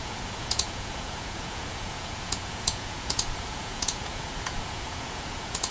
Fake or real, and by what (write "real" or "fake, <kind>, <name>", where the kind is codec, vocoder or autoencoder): fake, vocoder, Vocos